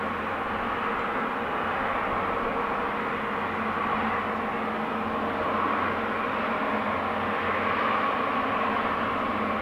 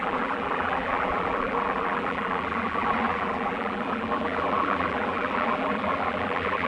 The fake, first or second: second